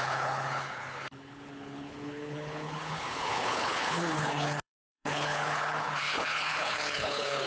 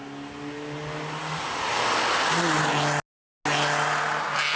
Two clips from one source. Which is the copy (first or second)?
first